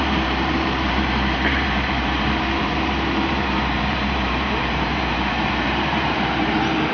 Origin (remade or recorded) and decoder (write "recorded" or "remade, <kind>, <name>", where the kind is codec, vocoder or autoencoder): remade, vocoder, BigVGAN v2